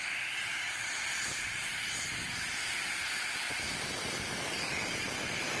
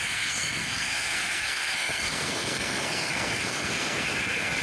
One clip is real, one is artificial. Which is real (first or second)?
first